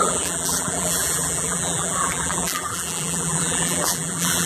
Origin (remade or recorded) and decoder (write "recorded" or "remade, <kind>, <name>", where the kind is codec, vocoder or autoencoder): remade, vocoder, BigVGAN v2